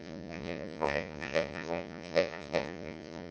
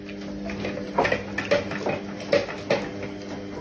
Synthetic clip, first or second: first